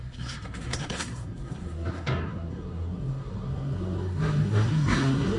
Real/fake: fake